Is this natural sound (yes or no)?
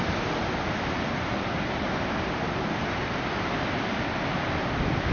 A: yes